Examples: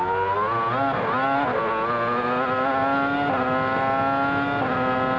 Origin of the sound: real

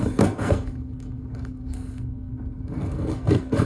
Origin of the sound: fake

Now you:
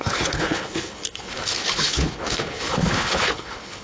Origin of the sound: fake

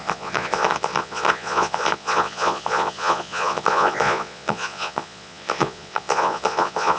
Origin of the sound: fake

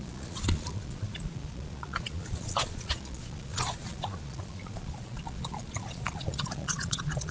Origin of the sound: fake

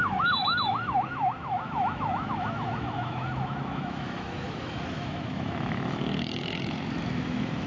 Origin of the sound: fake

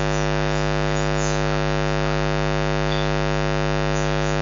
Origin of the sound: real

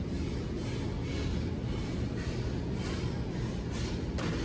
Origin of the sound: real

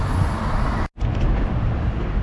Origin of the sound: real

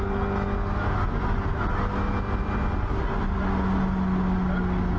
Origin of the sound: real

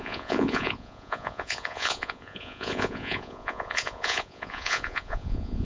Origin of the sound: fake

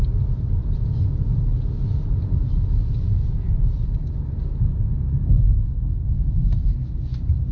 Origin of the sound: real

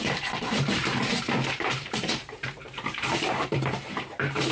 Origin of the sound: fake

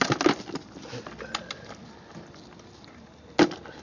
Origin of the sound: real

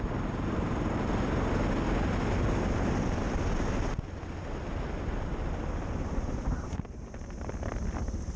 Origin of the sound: real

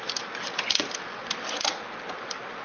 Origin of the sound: real